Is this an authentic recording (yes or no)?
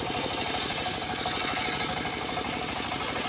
yes